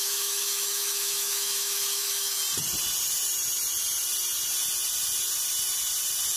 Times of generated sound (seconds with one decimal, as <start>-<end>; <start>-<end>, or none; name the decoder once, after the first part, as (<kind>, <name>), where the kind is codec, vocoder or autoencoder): 0.0-2.4 (autoencoder, DAC-VAE)